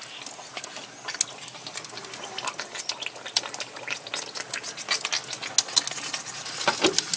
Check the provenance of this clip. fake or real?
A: real